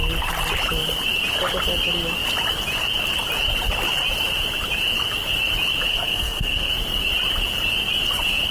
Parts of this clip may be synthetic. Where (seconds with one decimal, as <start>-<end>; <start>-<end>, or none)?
5.9-6.7